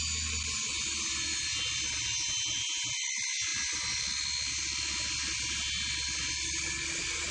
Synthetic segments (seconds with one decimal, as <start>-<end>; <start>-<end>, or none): none

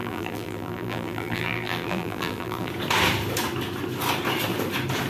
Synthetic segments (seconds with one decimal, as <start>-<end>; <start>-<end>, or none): 0.0-2.7

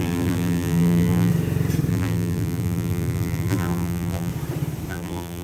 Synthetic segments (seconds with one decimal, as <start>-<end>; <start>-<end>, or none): 0.0-1.3; 1.9-4.3; 4.9-5.4

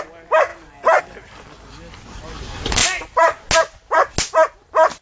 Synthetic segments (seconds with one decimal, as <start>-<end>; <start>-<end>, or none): 0.5-1.0

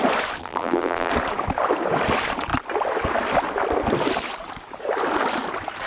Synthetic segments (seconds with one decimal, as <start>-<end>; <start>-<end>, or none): 0.4-1.1

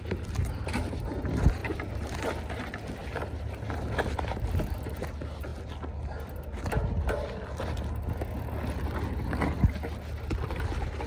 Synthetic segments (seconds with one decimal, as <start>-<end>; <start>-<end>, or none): 1.6-2.2; 3.0-5.1

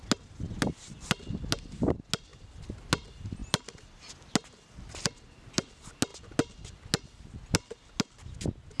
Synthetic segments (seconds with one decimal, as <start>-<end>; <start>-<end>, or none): 2.3-2.9